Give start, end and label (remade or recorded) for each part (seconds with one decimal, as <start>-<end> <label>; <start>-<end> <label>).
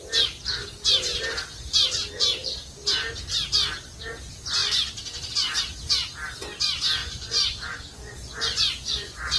0.0-7.0 recorded; 7.0-9.4 remade